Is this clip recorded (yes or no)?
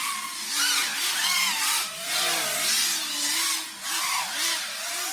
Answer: yes